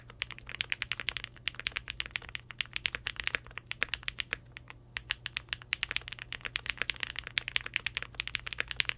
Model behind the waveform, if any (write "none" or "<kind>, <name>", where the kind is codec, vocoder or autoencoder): none